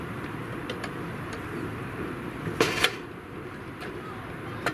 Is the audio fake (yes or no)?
yes